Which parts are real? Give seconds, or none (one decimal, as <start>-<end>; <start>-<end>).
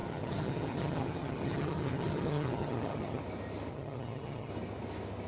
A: 3.2-3.7; 4.5-5.3